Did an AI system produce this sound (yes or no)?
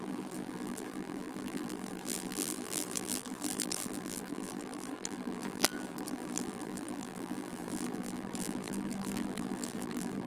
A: yes